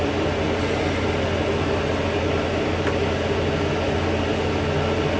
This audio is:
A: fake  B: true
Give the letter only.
B